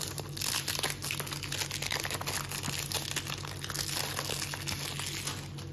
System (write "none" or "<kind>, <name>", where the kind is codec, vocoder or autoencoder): none